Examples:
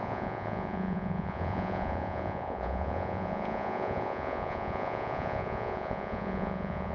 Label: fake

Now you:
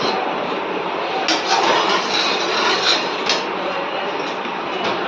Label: real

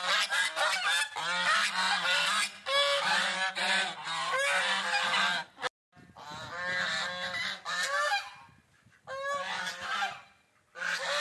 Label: real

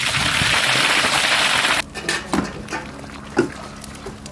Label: real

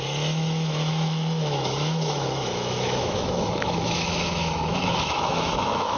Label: fake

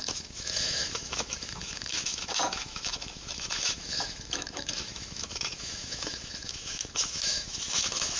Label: fake